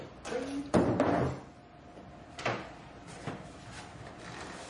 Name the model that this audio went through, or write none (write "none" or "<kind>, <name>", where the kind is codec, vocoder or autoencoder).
vocoder, BigVGAN v2